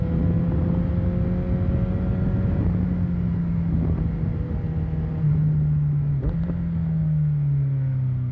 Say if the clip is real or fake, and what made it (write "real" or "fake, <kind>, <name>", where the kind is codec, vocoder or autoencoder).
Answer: real